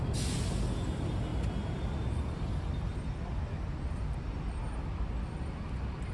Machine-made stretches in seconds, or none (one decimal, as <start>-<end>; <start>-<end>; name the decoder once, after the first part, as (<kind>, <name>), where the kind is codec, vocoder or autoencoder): none